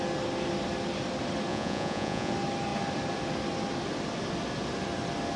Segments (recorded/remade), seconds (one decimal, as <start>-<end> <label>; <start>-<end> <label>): 0.0-1.5 recorded; 1.5-2.3 remade; 2.3-5.4 recorded